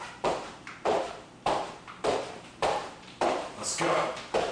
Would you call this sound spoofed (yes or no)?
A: yes